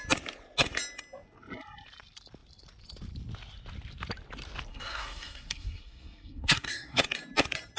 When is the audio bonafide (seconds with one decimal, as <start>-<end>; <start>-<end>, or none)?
0.0-4.7; 7.0-7.8